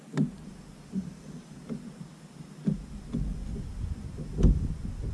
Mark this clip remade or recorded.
recorded